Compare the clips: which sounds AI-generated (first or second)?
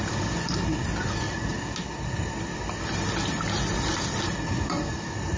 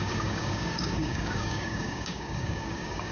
second